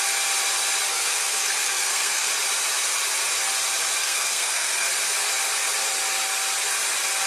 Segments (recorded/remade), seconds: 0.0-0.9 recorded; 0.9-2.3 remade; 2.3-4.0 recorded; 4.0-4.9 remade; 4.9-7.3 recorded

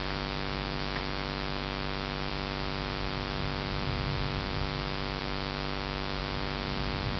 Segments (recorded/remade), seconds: 0.0-2.3 remade; 2.3-5.2 recorded; 5.2-6.2 remade; 6.2-7.2 recorded

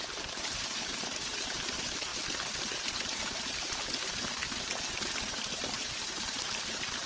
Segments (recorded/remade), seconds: 0.0-2.1 remade; 2.1-2.6 recorded; 2.6-4.4 remade; 4.4-5.2 recorded; 5.2-7.1 remade

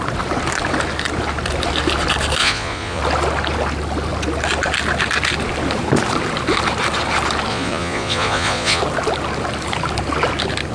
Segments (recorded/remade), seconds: 0.0-2.4 recorded; 2.4-3.0 remade; 3.0-7.5 recorded; 7.5-8.8 remade; 8.8-10.7 recorded

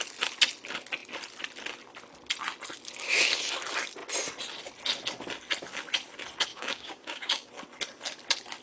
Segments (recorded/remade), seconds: 0.0-6.5 recorded; 6.5-7.5 remade; 7.5-8.6 recorded

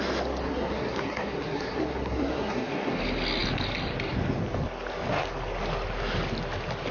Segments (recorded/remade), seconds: 0.0-0.4 recorded; 0.4-3.0 remade; 3.0-6.9 recorded